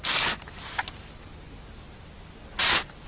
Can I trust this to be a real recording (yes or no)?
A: yes